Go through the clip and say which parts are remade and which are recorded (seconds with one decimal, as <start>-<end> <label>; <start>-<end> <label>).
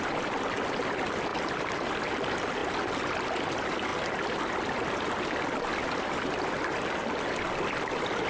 0.0-8.3 recorded